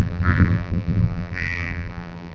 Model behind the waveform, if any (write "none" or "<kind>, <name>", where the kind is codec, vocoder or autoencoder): vocoder, BigVGAN v2